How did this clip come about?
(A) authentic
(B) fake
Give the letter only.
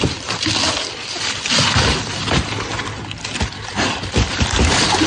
A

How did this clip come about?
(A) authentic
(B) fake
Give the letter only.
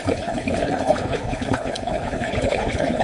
B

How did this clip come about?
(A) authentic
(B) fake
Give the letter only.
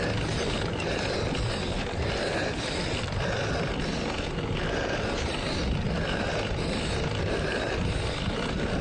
A